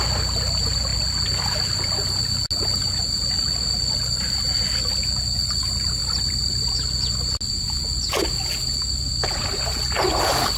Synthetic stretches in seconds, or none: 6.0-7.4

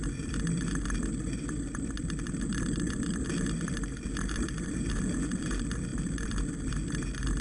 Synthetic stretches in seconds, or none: none

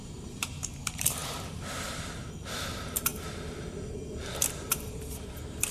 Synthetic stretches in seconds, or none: 0.0-3.1; 4.7-5.7

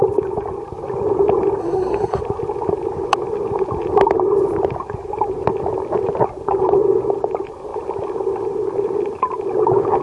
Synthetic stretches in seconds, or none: 1.6-2.2

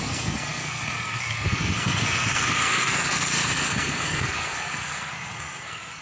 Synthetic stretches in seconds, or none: 0.0-6.0

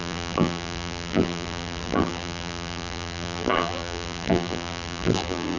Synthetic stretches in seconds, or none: 0.0-5.6